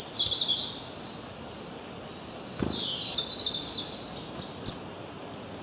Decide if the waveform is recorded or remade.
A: recorded